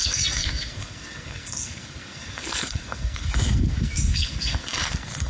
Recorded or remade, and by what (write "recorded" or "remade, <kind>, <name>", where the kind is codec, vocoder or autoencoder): remade, codec, SNAC